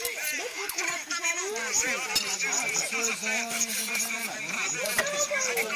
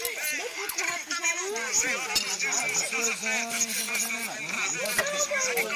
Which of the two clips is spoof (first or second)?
first